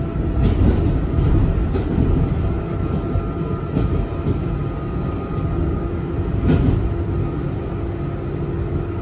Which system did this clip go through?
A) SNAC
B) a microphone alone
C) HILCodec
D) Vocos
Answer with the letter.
B